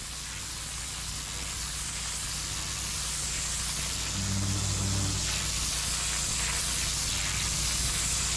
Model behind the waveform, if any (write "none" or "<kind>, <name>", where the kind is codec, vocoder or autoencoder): none